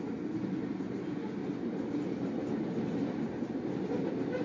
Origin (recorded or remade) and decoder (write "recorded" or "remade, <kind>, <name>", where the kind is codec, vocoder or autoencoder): recorded